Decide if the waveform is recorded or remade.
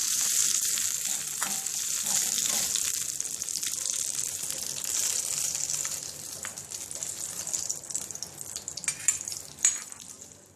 remade